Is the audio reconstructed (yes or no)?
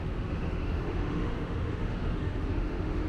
yes